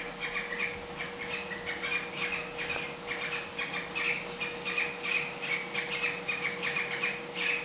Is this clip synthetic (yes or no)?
no